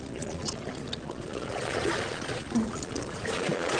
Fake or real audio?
fake